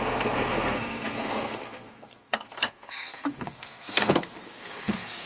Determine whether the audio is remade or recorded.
remade